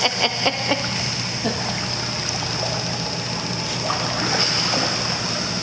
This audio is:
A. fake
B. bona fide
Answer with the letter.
B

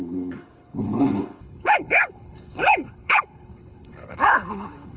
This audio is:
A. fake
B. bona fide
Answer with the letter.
A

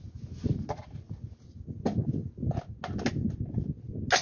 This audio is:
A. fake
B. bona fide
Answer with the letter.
B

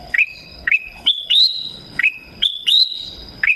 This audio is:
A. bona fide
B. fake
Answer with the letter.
B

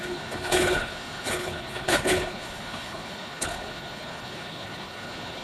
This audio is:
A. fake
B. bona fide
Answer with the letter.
A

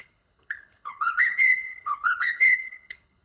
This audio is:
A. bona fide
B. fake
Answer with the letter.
B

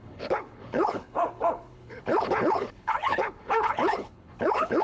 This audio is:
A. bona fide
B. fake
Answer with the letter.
B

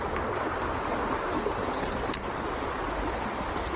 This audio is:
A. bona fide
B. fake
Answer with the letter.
A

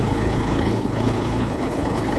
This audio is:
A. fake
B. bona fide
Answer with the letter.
A